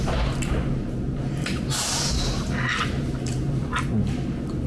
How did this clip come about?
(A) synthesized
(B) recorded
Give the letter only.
B